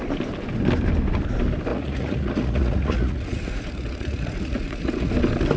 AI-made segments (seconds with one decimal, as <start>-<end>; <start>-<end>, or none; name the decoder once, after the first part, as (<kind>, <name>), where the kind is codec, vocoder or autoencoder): 1.7-5.1 (vocoder, Vocos)